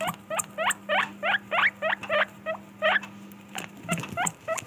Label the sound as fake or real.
real